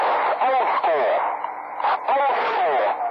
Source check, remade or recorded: recorded